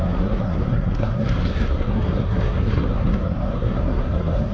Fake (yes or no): yes